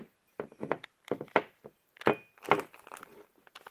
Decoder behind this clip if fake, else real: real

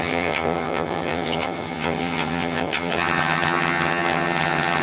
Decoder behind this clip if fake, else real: fake, vocoder, HiFi-GAN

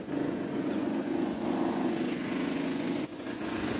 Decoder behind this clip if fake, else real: fake, vocoder, Vocos